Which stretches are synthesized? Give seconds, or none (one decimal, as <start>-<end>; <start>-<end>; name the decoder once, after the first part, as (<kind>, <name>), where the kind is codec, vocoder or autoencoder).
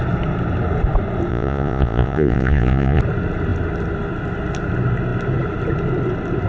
1.3-3.0 (vocoder, Vocos)